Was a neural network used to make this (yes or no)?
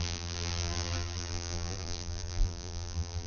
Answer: yes